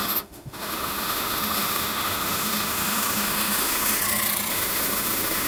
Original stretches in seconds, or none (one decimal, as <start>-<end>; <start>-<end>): 4.0-4.5